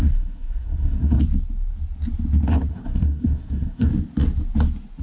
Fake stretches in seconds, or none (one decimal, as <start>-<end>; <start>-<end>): 0.0-1.2; 2.7-3.9

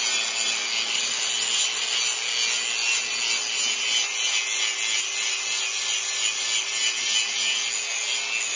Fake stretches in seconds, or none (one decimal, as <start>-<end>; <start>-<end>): none

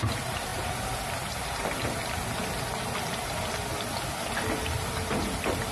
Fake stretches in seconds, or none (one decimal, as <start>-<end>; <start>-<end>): none

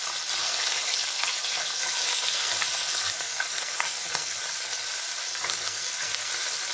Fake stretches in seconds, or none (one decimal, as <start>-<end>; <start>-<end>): 0.4-4.4; 5.3-6.3

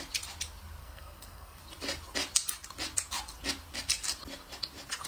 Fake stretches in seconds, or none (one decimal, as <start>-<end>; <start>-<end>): 0.8-1.6

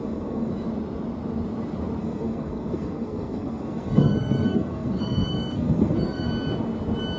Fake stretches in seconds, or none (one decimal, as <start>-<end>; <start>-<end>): 0.0-0.5; 2.0-6.3

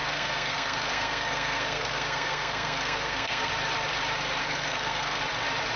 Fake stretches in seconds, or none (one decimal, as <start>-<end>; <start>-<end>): 0.0-3.5; 4.4-5.2